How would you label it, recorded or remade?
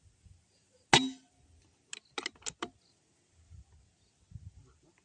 recorded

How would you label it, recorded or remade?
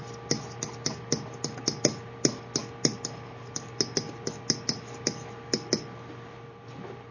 recorded